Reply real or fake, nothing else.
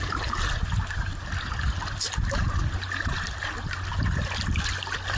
real